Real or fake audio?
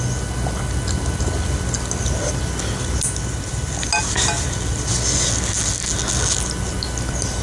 real